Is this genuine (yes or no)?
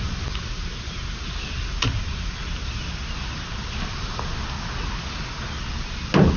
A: yes